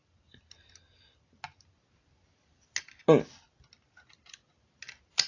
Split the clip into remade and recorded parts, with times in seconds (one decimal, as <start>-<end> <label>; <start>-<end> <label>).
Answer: 0.0-5.3 recorded